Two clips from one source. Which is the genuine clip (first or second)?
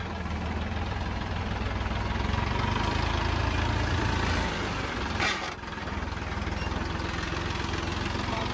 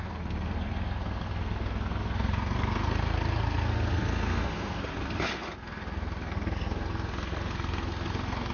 first